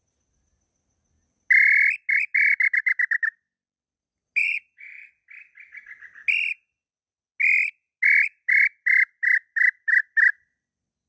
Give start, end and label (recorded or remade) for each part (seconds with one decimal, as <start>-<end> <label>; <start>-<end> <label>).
0.0-4.4 recorded; 4.4-5.1 remade; 5.1-11.1 recorded